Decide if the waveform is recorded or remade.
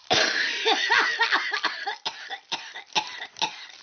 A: remade